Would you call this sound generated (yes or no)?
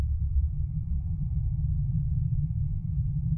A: yes